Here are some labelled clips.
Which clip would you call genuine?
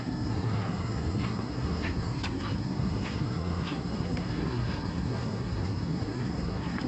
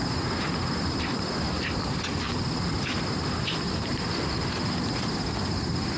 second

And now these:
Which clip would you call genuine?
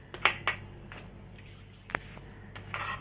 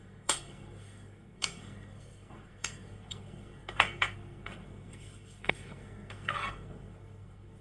first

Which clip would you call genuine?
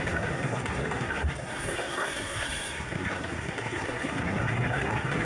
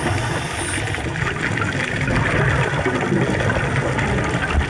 second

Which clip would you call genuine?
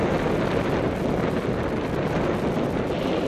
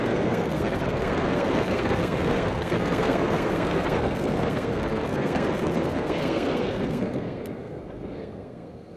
first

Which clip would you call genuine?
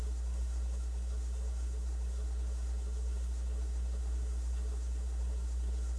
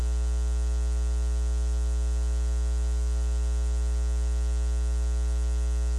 second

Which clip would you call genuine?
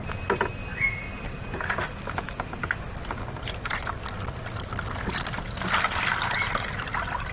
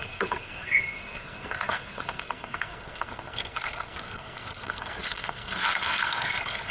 first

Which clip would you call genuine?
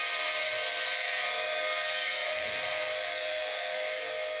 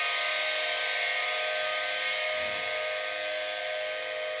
second